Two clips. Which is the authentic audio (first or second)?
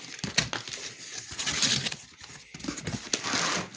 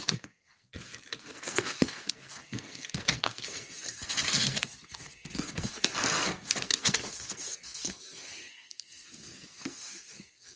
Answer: first